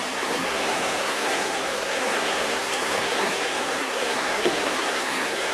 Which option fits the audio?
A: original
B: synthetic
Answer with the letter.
B